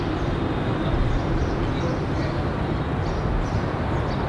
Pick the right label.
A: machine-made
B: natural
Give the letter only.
B